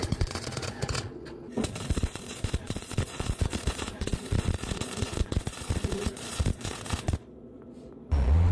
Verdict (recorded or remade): remade